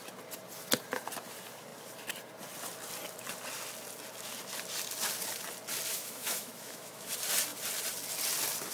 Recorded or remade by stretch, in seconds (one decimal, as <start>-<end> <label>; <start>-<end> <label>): 0.0-5.9 recorded; 5.9-7.1 remade; 7.1-8.7 recorded